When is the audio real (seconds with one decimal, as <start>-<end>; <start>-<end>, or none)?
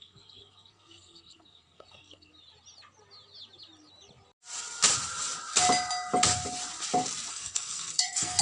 2.3-7.3